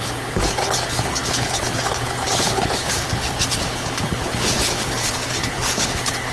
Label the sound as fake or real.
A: fake